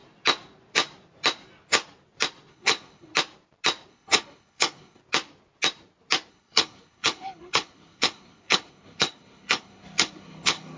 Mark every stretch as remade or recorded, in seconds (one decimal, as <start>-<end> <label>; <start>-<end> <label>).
0.0-2.5 recorded; 2.5-3.1 remade; 3.1-3.9 recorded; 3.9-5.0 remade; 5.0-6.3 recorded; 6.3-10.8 remade